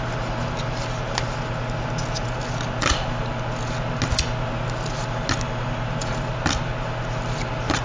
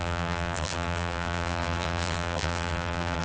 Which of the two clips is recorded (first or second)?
first